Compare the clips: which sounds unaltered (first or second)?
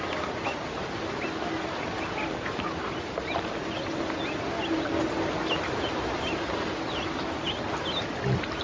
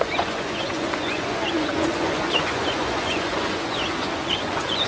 first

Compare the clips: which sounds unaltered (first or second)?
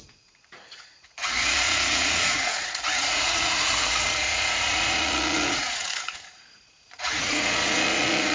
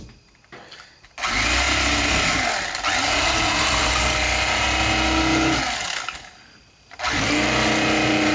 second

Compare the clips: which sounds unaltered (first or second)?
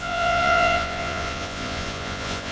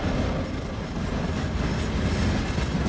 second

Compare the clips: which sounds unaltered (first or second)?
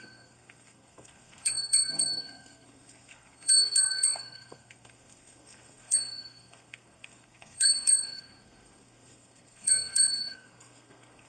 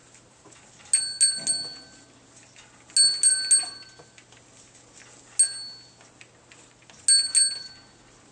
second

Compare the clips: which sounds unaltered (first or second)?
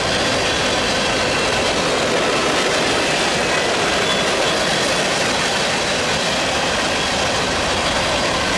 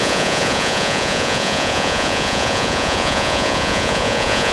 first